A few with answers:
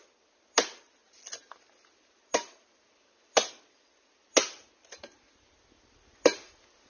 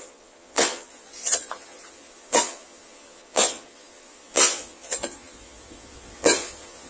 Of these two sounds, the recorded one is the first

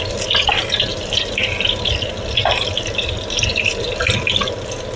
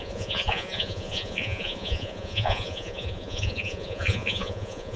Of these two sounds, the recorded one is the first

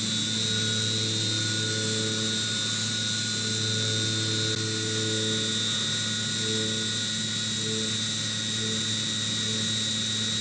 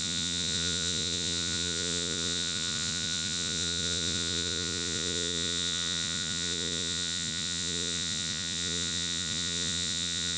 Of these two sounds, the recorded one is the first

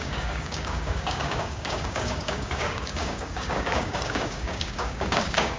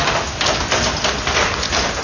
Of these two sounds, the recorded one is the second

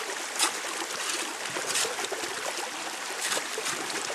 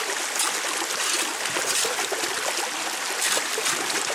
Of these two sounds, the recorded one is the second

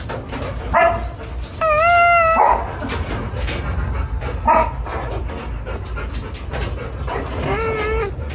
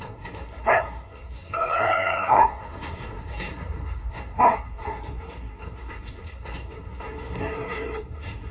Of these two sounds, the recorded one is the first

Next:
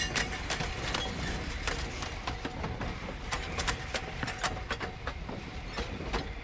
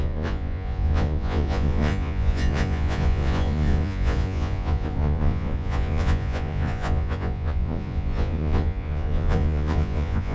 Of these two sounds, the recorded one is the first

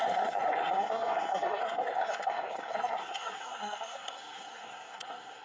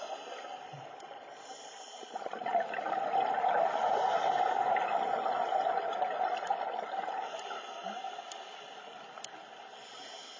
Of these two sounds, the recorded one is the second